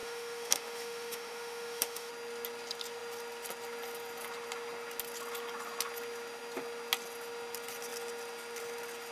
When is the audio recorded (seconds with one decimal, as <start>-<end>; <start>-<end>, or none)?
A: 2.1-9.1